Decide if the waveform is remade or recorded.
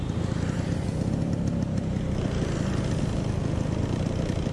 recorded